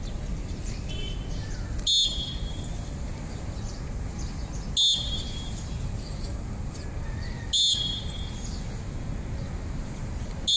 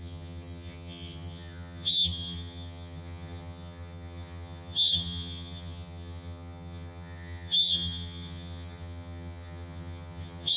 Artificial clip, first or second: second